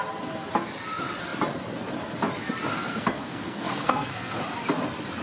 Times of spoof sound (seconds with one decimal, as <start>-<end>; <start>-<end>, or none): 2.9-4.4